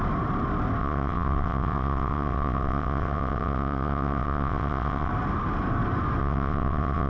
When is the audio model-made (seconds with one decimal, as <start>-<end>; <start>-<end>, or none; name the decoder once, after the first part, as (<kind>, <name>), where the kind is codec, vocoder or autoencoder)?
0.8-5.1 (vocoder, WaveNeXt); 6.2-7.1